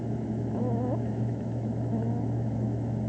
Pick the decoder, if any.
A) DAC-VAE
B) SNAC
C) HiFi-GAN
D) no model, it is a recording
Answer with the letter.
A